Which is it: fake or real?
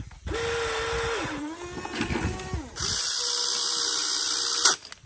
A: real